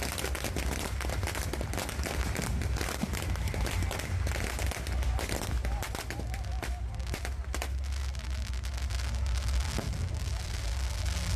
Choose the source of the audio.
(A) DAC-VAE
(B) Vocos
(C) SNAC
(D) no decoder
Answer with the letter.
D